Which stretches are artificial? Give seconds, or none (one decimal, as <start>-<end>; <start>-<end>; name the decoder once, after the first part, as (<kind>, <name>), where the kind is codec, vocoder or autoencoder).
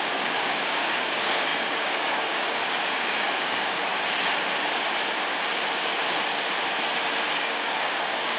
0.0-3.8 (codec, DAC); 7.3-8.4